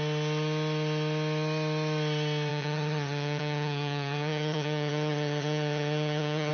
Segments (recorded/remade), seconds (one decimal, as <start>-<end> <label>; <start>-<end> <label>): 0.0-2.5 recorded; 2.5-6.5 remade